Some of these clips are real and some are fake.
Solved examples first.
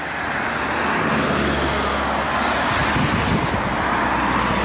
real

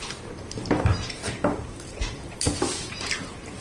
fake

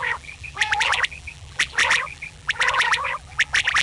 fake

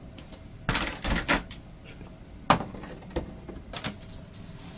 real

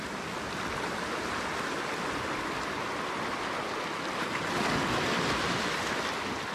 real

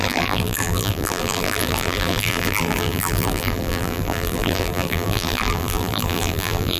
fake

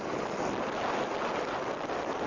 real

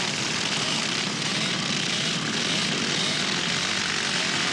real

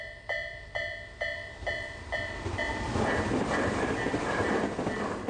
fake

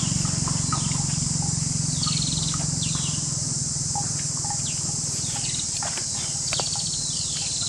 real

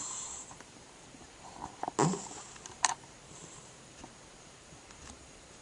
fake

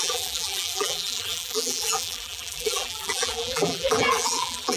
fake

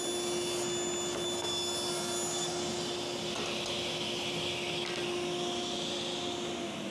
real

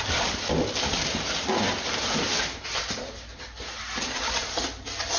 fake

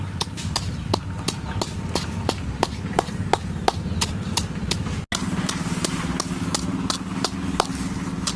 real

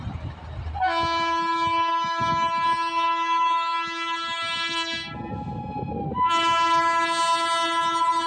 real